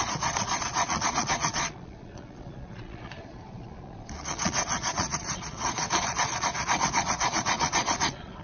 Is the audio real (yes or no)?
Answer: no